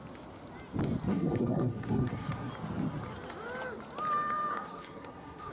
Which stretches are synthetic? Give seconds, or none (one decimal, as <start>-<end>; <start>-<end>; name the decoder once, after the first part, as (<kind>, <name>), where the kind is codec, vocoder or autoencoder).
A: 1.1-2.5 (codec, SNAC); 4.5-5.5